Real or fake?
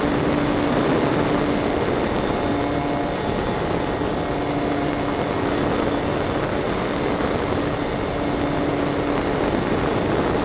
real